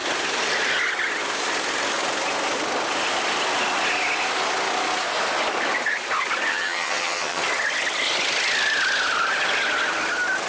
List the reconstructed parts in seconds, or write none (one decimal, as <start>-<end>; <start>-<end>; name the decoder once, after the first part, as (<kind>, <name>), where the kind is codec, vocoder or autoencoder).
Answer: 6.5-7.4 (vocoder, HiFi-GAN)